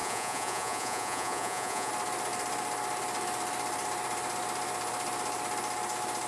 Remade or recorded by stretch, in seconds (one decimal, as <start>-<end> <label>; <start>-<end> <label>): 0.0-1.9 remade; 1.9-6.3 recorded